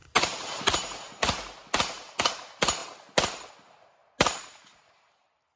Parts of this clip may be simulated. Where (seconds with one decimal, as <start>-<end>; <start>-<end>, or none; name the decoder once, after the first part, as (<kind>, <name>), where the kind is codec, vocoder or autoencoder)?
2.8-3.5 (vocoder, BigVGAN v2)